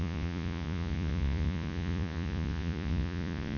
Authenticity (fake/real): fake